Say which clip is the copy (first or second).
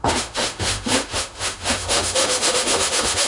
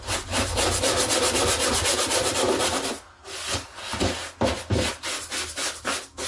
first